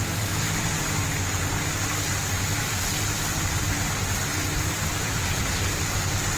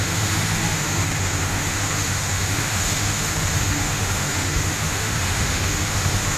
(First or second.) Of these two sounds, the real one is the first